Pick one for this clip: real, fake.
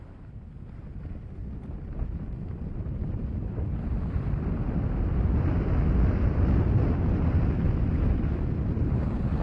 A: real